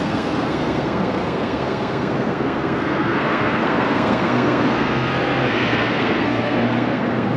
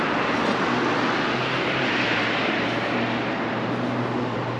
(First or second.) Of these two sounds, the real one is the second